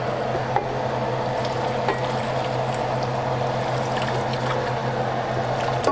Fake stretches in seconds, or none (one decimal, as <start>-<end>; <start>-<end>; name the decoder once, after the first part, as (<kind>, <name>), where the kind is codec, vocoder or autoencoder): none